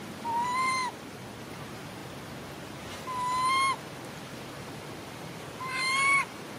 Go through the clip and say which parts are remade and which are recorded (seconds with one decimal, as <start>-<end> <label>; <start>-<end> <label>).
0.0-2.0 remade; 2.0-3.8 recorded; 3.8-6.6 remade